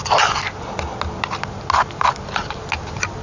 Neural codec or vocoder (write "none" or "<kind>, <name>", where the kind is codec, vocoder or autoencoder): none